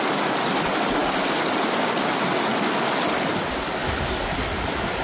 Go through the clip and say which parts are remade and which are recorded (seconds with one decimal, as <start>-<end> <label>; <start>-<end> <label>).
0.0-5.0 recorded